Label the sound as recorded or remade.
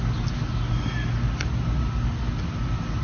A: recorded